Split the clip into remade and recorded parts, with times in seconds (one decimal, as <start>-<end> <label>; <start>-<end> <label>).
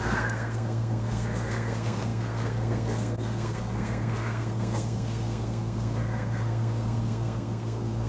0.0-8.1 remade